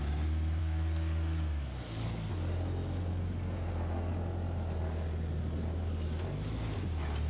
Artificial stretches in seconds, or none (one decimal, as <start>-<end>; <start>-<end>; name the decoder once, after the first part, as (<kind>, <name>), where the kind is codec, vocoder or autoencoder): 0.6-2.3 (codec, SNAC); 3.1-4.1